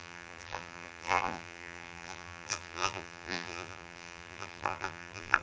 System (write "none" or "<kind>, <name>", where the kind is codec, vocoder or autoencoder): vocoder, BigVGAN v2